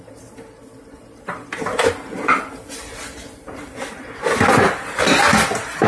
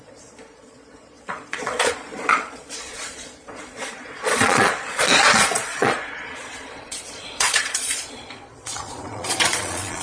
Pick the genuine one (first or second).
first